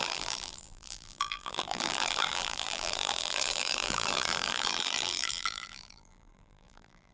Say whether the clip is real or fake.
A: fake